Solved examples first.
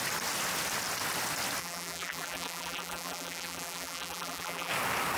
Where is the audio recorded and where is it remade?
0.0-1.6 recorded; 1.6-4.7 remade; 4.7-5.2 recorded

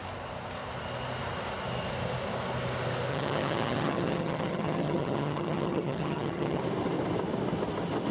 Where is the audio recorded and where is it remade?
0.0-3.1 recorded; 3.1-6.6 remade; 6.6-8.1 recorded

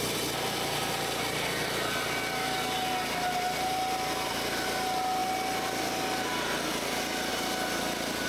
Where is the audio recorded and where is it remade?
0.0-8.3 recorded

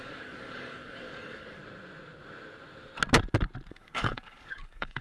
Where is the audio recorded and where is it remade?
0.0-1.6 remade; 1.6-3.7 recorded; 3.7-5.0 remade